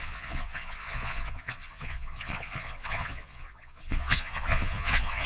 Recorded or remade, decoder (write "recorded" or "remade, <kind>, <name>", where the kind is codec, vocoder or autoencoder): remade, vocoder, Vocos